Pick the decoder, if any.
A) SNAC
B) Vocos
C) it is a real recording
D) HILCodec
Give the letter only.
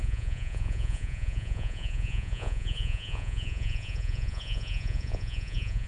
B